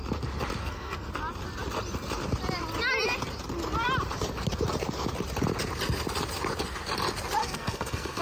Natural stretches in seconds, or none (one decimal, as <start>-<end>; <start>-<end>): 0.0-0.6; 1.1-7.4

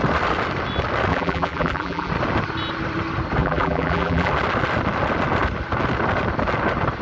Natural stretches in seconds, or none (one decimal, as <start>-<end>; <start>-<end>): 0.0-1.1; 2.1-3.4; 4.3-7.0

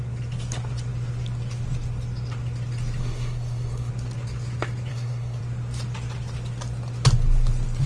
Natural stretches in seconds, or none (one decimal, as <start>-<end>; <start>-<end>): 0.0-3.0; 3.9-4.9; 5.4-7.9

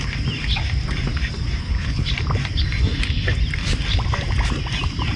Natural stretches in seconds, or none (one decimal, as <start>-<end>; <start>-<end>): 0.0-1.6; 2.1-5.2

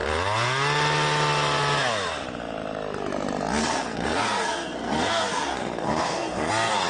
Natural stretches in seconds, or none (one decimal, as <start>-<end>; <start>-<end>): 0.0-3.6; 6.5-6.9

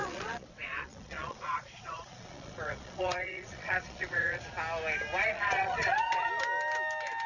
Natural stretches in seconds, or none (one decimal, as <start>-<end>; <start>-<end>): 4.4-5.2; 6.3-7.3

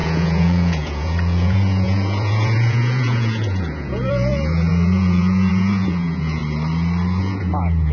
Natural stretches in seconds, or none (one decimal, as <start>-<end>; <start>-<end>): 6.4-7.2